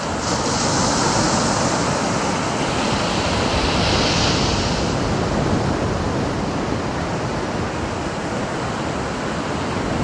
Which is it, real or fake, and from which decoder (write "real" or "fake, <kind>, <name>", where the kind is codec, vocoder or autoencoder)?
real